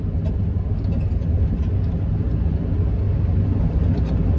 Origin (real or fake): real